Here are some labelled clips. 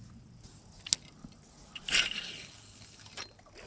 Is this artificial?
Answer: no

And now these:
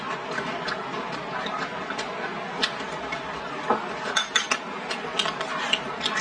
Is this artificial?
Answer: no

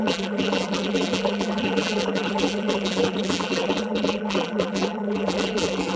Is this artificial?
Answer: yes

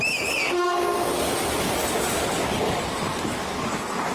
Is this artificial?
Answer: no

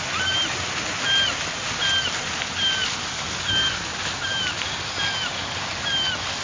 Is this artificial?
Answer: no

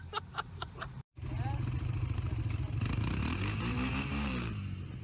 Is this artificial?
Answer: yes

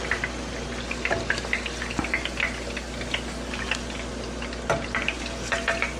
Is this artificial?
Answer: no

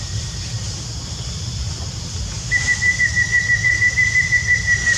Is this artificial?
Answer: no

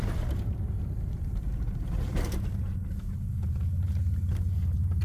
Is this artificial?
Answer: yes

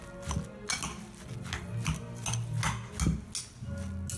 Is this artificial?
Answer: no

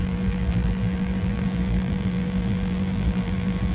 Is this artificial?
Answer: yes